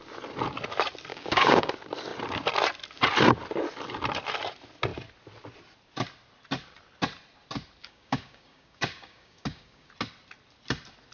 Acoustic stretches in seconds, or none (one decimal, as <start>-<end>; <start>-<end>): 0.0-1.1; 1.7-7.8; 9.9-11.1